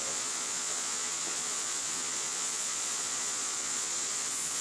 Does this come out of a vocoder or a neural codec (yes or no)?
yes